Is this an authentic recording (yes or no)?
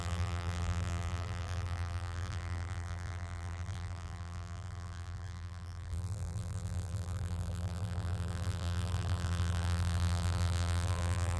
no